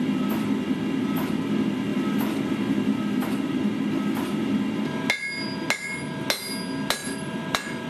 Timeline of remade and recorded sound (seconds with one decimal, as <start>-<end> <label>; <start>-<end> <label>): 0.0-1.9 recorded; 1.9-2.9 remade; 2.9-7.0 recorded; 7.0-7.9 remade